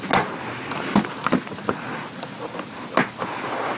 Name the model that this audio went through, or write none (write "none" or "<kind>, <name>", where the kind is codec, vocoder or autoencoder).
none